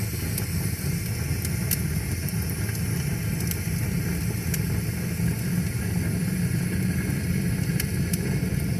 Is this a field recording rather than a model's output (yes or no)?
yes